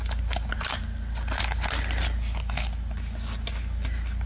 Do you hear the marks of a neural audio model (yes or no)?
no